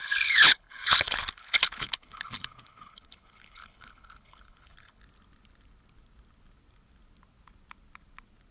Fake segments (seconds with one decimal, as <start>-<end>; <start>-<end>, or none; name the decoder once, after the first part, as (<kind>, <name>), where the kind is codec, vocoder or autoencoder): 0.0-5.0 (codec, HILCodec)